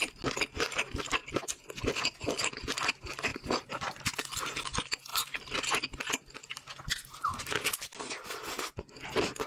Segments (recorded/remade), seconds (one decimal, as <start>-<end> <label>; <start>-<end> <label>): 0.0-1.2 recorded; 1.2-2.4 remade; 2.4-3.3 recorded; 3.3-3.9 remade; 3.9-5.1 recorded; 5.1-6.1 remade; 6.1-9.5 recorded